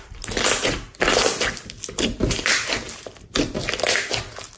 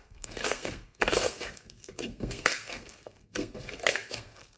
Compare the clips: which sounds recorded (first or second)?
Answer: first